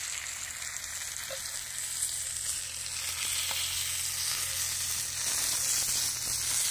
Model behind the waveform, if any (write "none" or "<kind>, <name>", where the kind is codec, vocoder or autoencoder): none